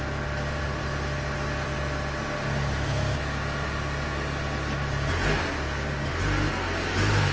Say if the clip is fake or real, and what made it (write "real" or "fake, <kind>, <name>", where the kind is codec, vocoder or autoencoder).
real